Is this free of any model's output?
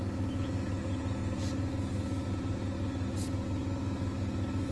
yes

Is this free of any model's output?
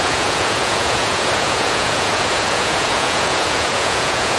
no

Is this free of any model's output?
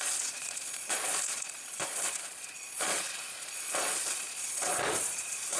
no